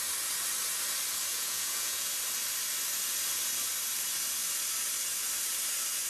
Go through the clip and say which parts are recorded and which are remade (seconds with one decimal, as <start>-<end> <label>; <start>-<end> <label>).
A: 0.0-1.3 recorded; 1.3-2.1 remade; 2.1-6.1 recorded

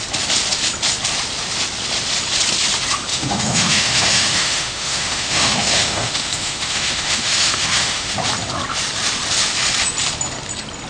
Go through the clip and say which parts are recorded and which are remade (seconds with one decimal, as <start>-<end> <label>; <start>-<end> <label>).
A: 0.0-3.1 recorded; 3.1-8.1 remade; 8.1-10.9 recorded

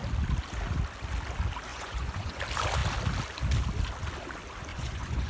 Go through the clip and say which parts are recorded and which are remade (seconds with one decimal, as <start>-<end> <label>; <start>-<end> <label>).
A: 0.0-1.7 recorded; 1.7-2.4 remade; 2.4-4.7 recorded; 4.7-5.3 remade

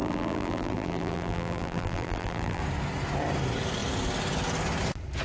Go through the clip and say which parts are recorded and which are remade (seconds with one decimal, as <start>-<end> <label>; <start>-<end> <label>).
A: 0.0-2.6 remade; 2.6-5.2 recorded

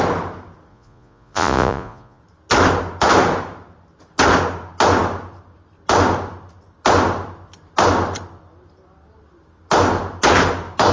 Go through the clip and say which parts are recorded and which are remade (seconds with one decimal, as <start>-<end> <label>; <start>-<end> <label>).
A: 0.0-0.7 recorded; 0.7-2.2 remade; 2.2-10.9 recorded

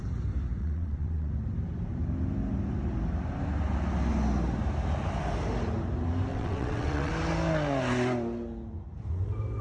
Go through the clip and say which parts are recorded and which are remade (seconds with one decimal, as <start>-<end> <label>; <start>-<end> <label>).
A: 0.0-0.6 recorded; 0.6-1.3 remade; 1.3-6.3 recorded; 6.3-7.1 remade; 7.1-9.6 recorded

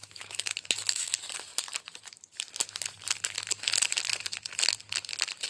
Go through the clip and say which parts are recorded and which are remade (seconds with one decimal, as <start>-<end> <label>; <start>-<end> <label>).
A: 0.0-1.1 remade; 1.1-5.5 recorded